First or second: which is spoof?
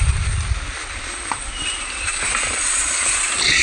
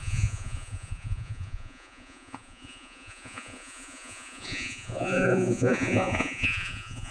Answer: second